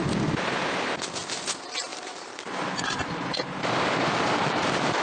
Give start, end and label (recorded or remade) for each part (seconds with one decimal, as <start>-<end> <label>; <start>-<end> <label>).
0.0-1.9 recorded; 1.9-5.0 remade